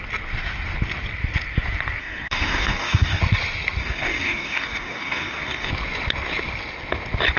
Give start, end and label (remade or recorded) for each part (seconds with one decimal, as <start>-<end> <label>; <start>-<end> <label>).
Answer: 0.0-2.0 recorded; 2.0-3.2 remade; 3.2-3.8 recorded; 3.8-5.7 remade; 5.7-7.4 recorded